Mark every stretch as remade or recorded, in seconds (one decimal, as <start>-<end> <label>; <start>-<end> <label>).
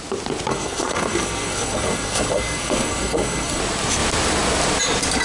0.0-0.5 recorded; 0.5-3.6 remade; 3.6-5.2 recorded